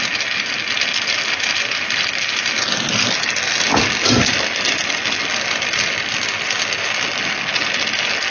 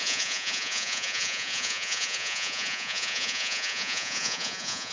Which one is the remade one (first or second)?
second